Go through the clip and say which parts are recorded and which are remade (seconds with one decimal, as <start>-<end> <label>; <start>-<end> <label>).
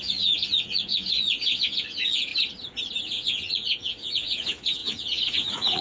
0.0-2.3 remade; 2.3-3.0 recorded; 3.0-5.8 remade